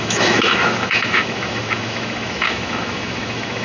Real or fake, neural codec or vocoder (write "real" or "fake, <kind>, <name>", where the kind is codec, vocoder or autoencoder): fake, autoencoder, DAC-VAE